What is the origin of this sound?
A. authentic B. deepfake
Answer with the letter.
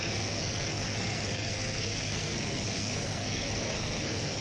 B